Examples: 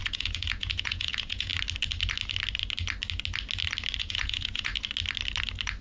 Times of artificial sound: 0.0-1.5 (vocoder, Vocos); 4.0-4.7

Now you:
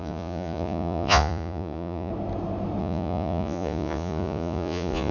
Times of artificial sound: 0.0-2.1 (vocoder, Vocos); 2.8-5.1

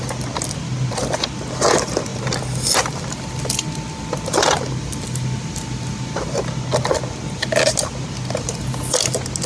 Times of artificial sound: none

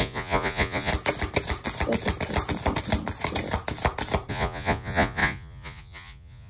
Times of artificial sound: 0.0-0.9 (vocoder, Vocos); 4.3-6.5

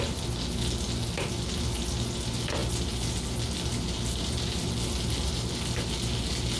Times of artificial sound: none

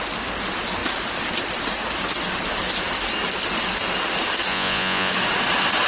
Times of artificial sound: 4.5-5.1 (vocoder, Vocos)

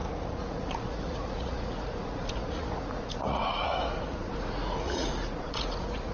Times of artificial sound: 0.0-6.1 (vocoder, Vocos)